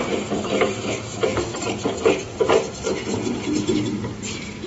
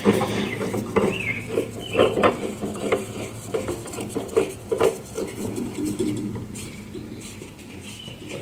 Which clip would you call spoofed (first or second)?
second